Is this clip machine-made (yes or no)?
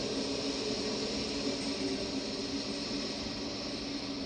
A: no